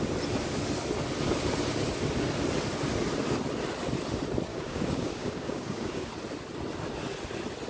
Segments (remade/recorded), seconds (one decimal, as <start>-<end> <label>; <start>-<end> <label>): 0.0-4.5 recorded; 4.5-6.1 remade; 6.1-7.7 recorded